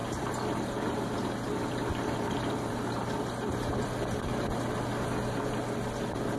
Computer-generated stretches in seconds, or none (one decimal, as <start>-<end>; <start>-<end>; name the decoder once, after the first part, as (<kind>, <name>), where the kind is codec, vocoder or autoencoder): 0.0-3.8 (vocoder, BigVGAN v2)